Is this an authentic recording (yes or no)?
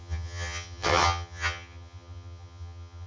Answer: no